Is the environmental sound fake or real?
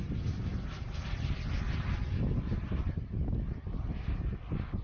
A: real